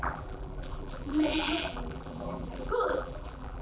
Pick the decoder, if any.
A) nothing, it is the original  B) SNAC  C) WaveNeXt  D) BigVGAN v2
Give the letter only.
D